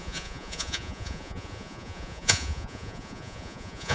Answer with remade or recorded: remade